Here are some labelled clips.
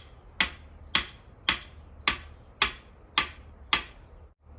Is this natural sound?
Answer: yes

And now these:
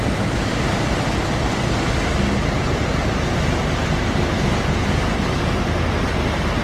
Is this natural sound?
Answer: yes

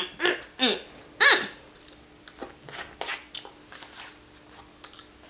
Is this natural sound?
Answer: yes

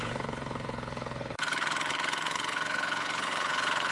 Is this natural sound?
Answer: no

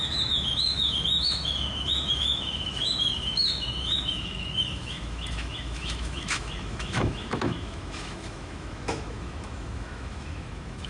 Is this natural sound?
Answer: no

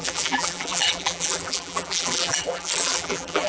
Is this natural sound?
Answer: no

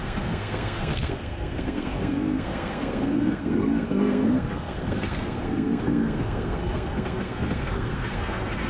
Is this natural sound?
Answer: no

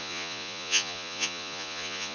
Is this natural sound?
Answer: no